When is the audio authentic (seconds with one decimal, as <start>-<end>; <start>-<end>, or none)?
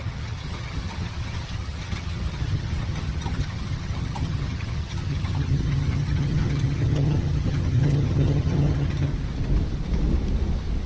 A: 9.1-10.9